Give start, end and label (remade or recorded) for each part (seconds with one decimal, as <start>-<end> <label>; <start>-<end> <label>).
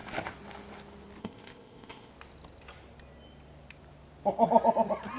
0.0-1.2 recorded; 1.2-2.1 remade; 2.1-5.2 recorded